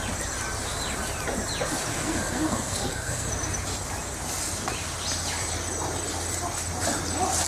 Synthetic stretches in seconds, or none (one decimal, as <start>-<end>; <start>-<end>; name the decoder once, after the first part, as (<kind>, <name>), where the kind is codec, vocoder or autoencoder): 1.9-3.3 (codec, SNAC)